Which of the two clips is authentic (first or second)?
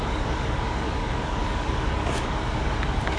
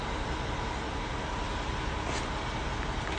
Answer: second